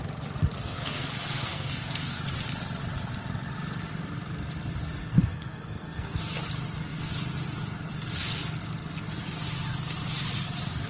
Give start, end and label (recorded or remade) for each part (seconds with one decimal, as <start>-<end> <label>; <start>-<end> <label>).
0.0-0.5 recorded; 0.5-2.2 remade; 2.2-5.0 recorded; 5.0-6.2 remade; 6.2-10.9 recorded

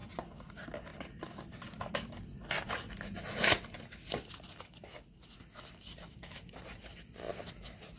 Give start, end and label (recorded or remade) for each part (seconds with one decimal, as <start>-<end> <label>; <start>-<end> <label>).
0.0-8.0 recorded

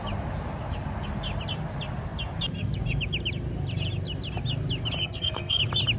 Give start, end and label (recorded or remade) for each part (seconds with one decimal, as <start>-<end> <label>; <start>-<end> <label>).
0.0-5.0 recorded; 5.0-5.6 remade; 5.6-6.0 recorded

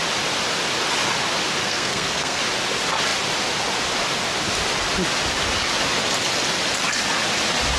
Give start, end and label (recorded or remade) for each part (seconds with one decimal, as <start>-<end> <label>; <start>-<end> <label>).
0.0-1.6 recorded; 1.6-2.4 remade; 2.4-7.8 recorded

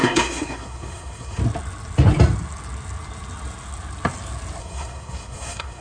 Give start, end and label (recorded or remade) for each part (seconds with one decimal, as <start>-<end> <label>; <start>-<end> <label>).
0.0-1.4 remade; 1.4-4.6 recorded; 4.6-5.8 remade